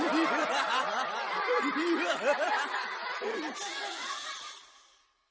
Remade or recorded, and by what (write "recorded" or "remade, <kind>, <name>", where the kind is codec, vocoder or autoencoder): recorded